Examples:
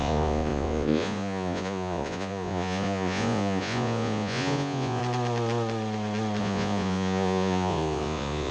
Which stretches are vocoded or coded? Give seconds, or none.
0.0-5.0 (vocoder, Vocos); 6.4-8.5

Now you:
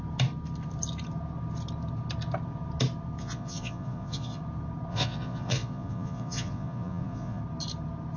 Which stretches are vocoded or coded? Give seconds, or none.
3.2-4.4 (vocoder, Vocos); 4.9-7.4

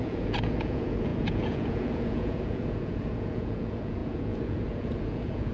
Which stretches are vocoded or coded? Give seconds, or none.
0.0-5.5 (vocoder, Vocos)

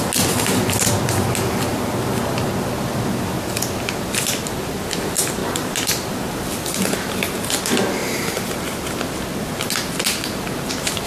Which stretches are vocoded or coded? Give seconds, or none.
none

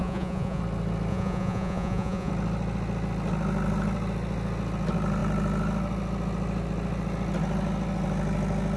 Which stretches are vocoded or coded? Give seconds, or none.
0.0-0.6 (vocoder, Vocos); 1.1-2.3

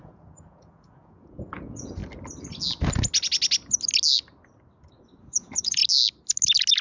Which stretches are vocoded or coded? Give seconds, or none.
0.0-2.0 (vocoder, Vocos); 5.2-5.8

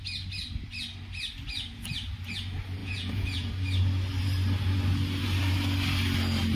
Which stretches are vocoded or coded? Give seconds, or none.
2.8-3.5 (vocoder, Vocos)